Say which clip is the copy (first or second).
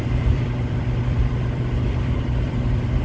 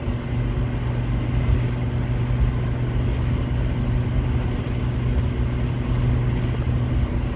first